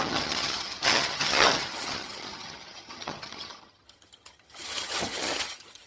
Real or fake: fake